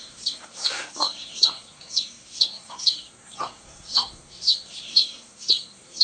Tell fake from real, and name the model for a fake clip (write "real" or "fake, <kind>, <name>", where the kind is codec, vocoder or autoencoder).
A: fake, codec, SNAC